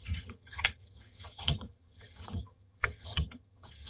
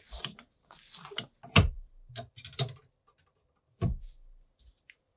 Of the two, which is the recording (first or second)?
second